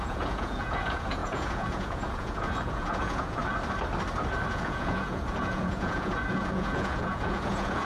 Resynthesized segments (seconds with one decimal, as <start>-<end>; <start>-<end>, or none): 0.0-3.4; 4.5-7.9